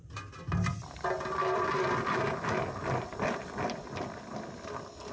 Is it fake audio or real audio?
real